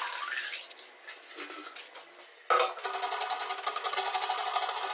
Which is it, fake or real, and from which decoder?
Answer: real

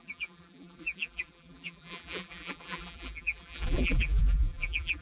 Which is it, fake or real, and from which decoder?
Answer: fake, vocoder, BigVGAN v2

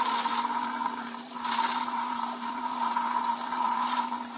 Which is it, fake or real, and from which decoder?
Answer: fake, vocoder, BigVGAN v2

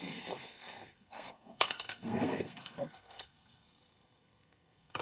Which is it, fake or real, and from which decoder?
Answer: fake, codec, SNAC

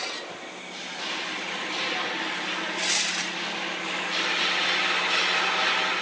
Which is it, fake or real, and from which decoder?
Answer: real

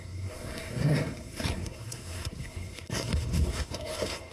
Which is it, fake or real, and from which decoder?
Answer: fake, codec, SNAC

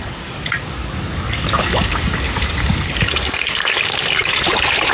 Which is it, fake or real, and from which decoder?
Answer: fake, codec, DAC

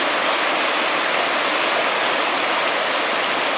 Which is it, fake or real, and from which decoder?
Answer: real